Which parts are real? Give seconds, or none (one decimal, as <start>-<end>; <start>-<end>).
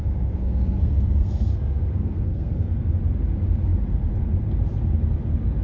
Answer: 2.8-5.6